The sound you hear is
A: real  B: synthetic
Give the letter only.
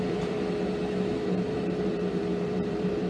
B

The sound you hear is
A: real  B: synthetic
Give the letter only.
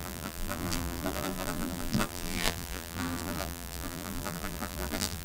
B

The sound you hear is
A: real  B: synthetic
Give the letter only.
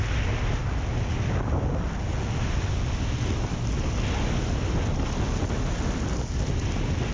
A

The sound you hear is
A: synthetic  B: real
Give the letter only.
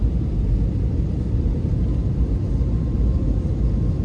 A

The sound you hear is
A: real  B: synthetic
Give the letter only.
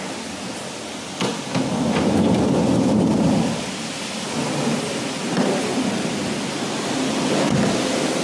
A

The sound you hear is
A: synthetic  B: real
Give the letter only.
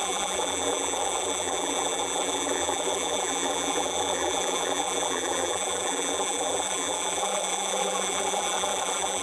A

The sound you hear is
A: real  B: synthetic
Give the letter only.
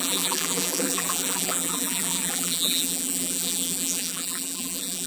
B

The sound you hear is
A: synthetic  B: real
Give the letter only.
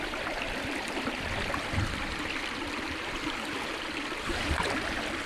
A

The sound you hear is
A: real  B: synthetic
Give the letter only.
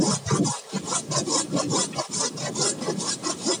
A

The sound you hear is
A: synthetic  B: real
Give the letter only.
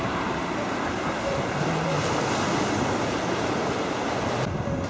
A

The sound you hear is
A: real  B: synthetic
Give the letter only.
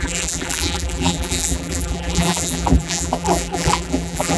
B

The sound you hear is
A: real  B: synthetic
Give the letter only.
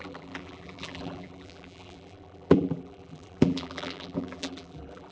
B